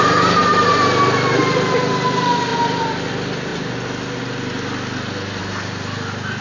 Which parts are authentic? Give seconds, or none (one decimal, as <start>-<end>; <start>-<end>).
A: 0.0-6.4